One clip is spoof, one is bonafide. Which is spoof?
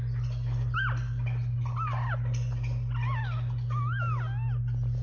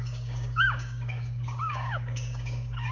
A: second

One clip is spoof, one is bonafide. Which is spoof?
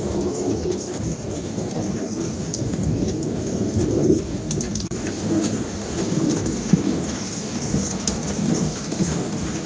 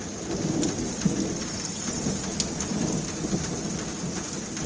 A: first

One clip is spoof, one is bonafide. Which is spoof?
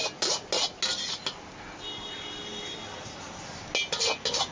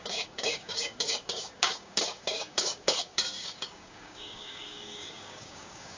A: second